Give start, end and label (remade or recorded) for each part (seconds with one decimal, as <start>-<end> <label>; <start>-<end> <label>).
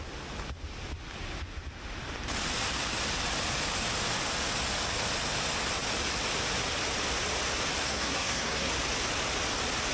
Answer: 0.0-7.8 recorded; 7.8-8.7 remade; 8.7-9.9 recorded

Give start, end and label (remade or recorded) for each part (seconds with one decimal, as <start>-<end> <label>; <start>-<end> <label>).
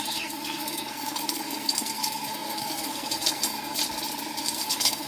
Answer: 0.0-3.8 remade; 3.8-4.4 recorded; 4.4-5.1 remade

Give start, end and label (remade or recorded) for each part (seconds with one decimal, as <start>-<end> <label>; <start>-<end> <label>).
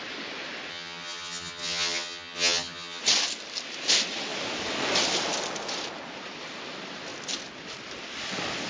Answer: 0.0-0.7 recorded; 0.7-3.0 remade; 3.0-8.7 recorded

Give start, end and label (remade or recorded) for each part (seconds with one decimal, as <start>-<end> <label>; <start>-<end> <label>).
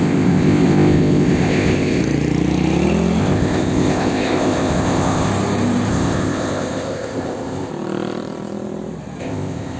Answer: 0.0-2.0 remade; 2.0-3.2 recorded; 3.2-5.3 remade; 5.3-5.9 recorded; 5.9-7.7 remade; 7.7-9.2 recorded; 9.2-9.8 remade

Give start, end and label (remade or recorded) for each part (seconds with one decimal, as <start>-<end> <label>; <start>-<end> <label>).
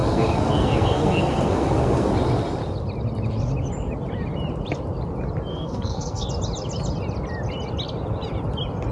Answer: 0.0-2.1 remade; 2.1-5.5 recorded; 5.5-6.3 remade; 6.3-8.9 recorded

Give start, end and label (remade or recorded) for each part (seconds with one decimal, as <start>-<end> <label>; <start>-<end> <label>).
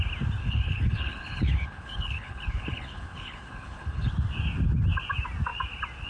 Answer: 0.0-0.4 recorded; 0.4-4.1 remade; 4.1-6.1 recorded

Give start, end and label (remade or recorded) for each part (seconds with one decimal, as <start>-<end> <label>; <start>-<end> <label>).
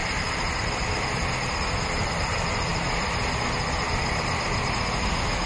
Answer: 0.0-5.5 recorded